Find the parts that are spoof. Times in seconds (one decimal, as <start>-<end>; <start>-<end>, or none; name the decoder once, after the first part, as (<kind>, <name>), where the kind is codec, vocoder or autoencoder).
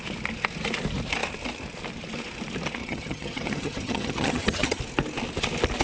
2.8-4.8 (vocoder, HiFi-GAN)